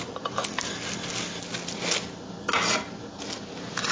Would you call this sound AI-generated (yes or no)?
no